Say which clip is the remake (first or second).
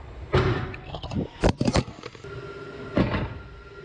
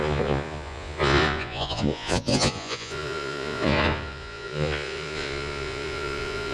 second